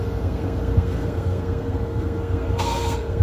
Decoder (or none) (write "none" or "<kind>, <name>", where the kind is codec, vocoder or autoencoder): codec, SNAC